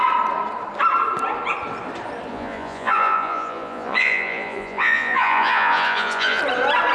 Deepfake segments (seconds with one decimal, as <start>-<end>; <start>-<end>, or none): 2.3-6.4

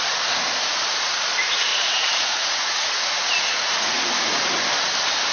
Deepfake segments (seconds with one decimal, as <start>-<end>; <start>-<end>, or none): 1.7-4.0

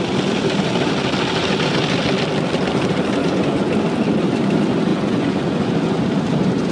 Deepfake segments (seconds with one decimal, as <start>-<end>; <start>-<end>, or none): 3.2-3.7; 4.9-6.0

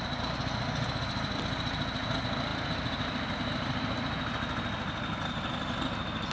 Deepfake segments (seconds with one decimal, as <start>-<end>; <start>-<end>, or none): none

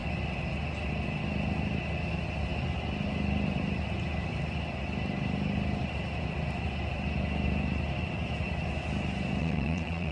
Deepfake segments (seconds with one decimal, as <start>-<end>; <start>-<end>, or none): 9.4-10.1

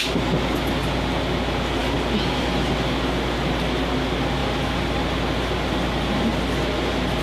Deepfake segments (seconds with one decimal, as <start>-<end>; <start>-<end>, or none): none

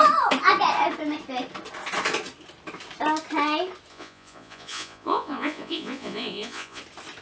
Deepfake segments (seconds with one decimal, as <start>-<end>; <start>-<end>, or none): 3.9-6.8